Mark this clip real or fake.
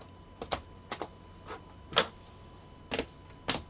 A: real